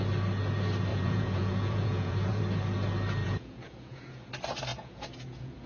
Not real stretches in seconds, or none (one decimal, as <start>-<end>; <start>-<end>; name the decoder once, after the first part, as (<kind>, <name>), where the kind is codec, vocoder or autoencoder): 0.9-2.4 (vocoder, Vocos); 3.2-4.3; 4.7-5.7